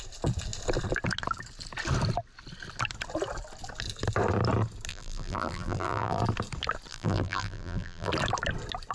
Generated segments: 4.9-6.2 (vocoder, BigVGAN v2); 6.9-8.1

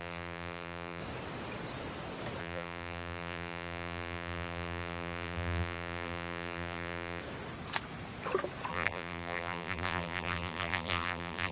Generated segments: 0.0-1.0 (vocoder, BigVGAN v2); 2.4-7.2; 8.7-11.5

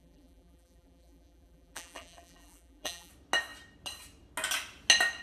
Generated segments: 0.0-3.1 (vocoder, BigVGAN v2)

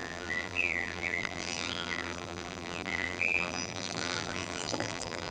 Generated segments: 0.0-5.3 (vocoder, BigVGAN v2)

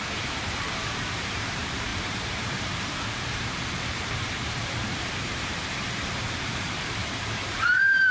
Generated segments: 0.0-8.1 (vocoder, BigVGAN v2)

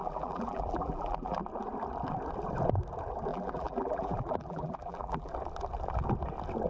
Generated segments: 0.0-1.4 (vocoder, BigVGAN v2); 3.3-5.3